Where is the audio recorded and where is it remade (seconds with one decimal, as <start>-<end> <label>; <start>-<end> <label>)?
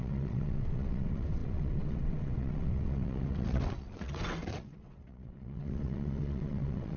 0.0-7.0 remade